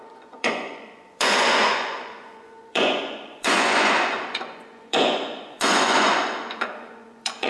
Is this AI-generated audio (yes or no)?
yes